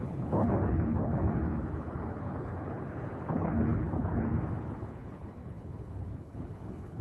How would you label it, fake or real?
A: fake